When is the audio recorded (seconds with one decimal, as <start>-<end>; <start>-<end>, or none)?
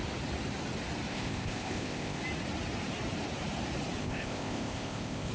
0.0-1.1; 2.2-4.0